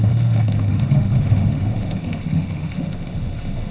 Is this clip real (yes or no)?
no